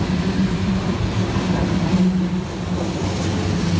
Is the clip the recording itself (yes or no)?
yes